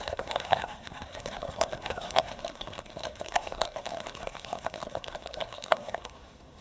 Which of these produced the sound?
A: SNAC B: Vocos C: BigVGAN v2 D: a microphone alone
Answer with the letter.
A